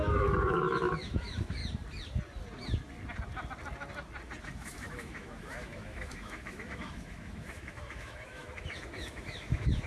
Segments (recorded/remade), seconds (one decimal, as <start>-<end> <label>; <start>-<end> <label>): 0.0-1.6 remade; 1.6-4.4 recorded; 4.4-9.9 remade